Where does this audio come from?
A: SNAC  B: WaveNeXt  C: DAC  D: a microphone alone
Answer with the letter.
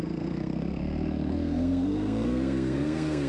A